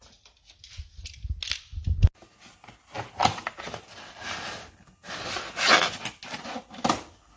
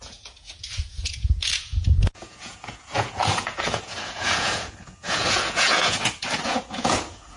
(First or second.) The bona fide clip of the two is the first